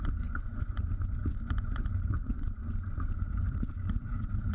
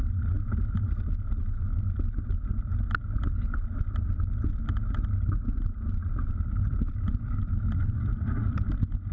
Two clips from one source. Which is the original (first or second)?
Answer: second